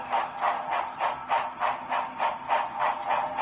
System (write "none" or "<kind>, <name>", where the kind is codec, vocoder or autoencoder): none